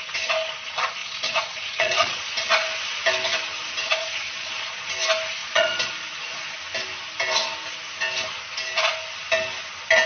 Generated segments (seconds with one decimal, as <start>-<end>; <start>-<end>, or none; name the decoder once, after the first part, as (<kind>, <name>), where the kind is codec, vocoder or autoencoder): 1.0-2.2 (vocoder, Vocos); 3.9-4.9; 5.4-5.9